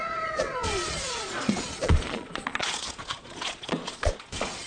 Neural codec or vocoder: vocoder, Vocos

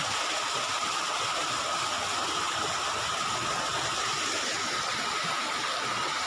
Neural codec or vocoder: none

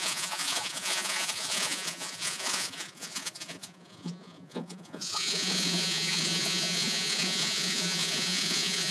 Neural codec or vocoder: vocoder, Vocos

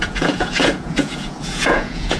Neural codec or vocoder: vocoder, Vocos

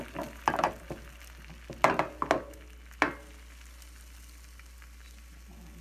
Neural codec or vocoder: none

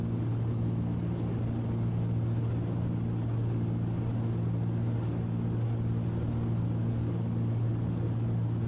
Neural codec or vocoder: none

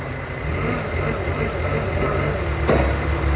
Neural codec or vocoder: none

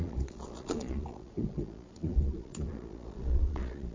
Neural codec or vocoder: vocoder, Vocos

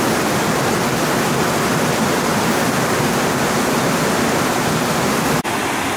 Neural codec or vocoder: none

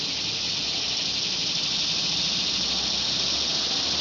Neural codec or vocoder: none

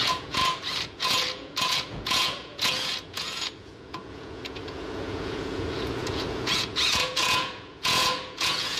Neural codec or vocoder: vocoder, Vocos